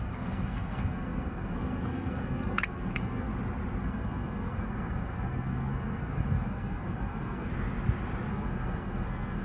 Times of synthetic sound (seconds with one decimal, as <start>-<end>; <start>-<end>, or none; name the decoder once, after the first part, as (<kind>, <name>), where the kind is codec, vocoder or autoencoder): 0.0-3.3 (codec, SNAC); 3.8-7.5; 8.3-9.4